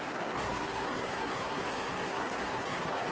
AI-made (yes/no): yes